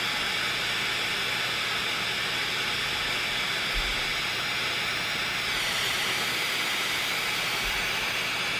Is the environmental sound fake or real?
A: real